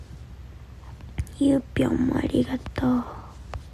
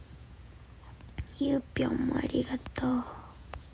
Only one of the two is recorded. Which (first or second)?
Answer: first